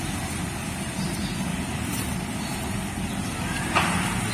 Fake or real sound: real